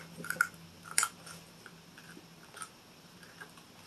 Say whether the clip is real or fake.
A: real